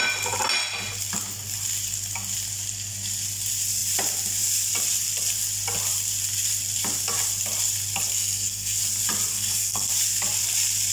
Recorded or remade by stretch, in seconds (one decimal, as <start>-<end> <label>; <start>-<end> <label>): 0.0-8.1 recorded; 8.1-8.8 remade; 8.8-9.3 recorded; 9.3-9.9 remade; 9.9-10.9 recorded